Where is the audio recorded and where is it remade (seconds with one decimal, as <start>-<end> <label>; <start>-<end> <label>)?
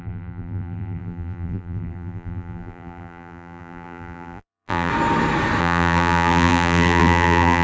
0.0-4.9 remade; 4.9-5.6 recorded; 5.6-7.6 remade